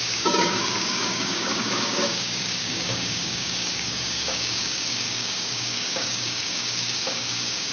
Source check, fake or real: fake